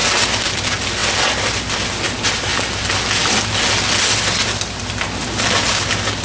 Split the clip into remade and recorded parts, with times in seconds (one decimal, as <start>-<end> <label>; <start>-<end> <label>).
0.0-6.2 recorded